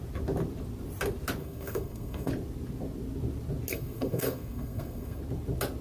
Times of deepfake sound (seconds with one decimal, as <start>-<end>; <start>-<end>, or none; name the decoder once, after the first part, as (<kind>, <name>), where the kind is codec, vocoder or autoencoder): 1.4-2.3 (codec, SNAC); 3.7-5.2